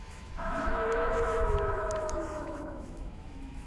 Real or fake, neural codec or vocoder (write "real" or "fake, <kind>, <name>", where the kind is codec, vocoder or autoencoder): fake, autoencoder, DAC-VAE